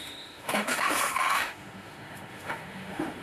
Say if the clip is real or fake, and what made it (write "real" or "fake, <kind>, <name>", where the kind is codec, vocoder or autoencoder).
fake, autoencoder, DAC-VAE